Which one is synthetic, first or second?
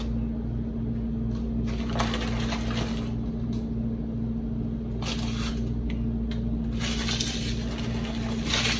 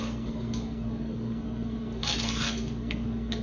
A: second